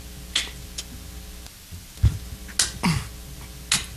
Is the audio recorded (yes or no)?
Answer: yes